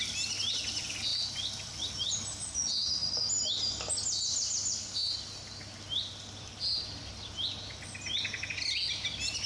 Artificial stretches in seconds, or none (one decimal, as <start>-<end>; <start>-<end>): none